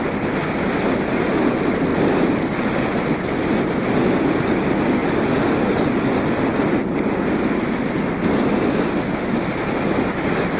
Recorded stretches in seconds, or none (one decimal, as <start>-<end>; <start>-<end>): 0.0-10.6